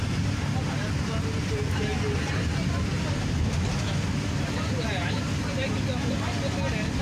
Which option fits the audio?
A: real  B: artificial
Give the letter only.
A